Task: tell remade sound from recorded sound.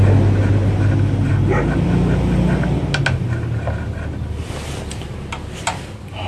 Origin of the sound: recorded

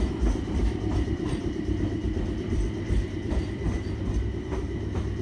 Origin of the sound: remade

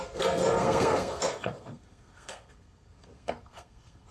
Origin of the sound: remade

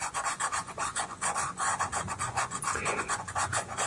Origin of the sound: remade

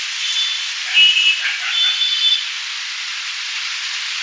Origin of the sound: recorded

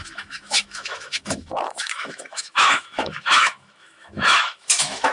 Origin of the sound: remade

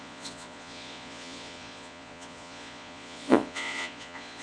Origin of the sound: remade